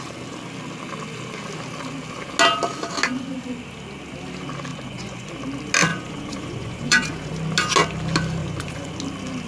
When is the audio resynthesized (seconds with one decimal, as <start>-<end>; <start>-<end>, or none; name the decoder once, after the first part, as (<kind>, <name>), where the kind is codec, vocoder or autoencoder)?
4.7-5.3 (vocoder, Vocos); 5.9-7.3; 8.4-8.9

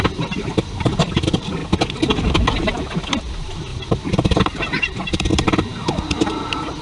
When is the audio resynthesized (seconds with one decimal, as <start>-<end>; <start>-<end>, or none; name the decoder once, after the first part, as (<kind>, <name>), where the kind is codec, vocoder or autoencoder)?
0.0-1.6 (vocoder, BigVGAN v2); 2.6-3.7; 4.4-6.8

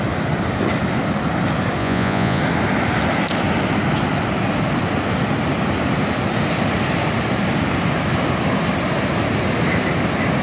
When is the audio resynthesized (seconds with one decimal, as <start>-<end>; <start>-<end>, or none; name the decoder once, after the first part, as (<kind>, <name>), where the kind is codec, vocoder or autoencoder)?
1.8-2.4 (vocoder, Vocos)